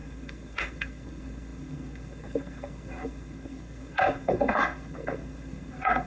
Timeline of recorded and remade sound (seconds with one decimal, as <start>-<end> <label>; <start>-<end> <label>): 0.0-6.1 remade